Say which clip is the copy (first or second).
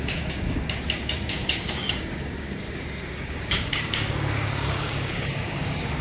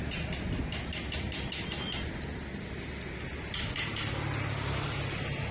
first